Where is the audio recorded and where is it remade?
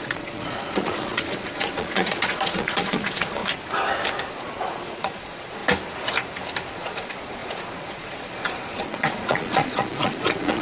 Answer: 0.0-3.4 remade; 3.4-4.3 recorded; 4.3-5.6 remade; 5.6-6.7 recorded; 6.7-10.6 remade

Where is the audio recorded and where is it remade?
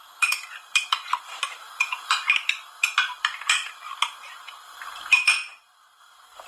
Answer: 0.0-1.6 recorded; 1.6-2.1 remade; 2.1-6.5 recorded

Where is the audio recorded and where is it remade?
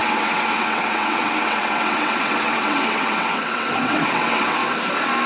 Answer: 0.0-4.6 remade; 4.6-5.3 recorded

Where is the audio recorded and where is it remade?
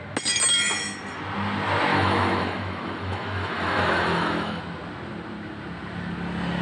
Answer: 0.0-1.9 recorded; 1.9-4.6 remade; 4.6-6.6 recorded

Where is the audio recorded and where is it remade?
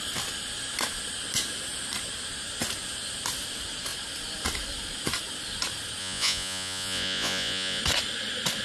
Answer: 0.0-6.0 recorded; 6.0-7.8 remade; 7.8-8.6 recorded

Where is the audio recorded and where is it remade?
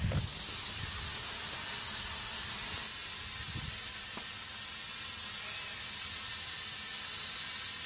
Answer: 0.0-7.9 recorded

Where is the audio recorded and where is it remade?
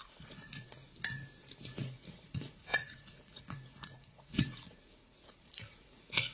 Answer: 0.0-0.9 remade; 0.9-1.6 recorded; 1.6-6.3 remade